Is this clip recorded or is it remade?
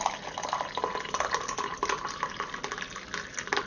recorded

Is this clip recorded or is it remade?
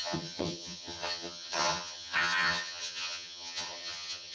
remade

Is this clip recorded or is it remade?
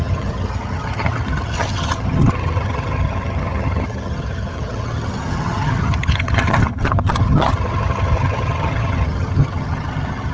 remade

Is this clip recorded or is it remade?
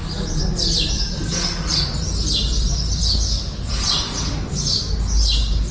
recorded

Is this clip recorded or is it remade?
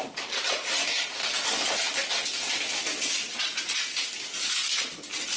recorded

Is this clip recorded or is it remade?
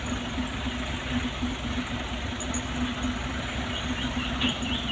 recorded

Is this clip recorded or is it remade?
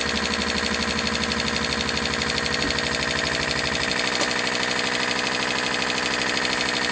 recorded